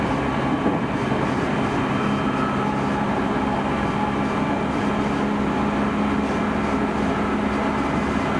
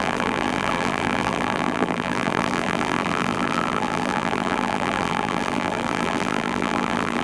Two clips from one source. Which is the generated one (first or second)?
second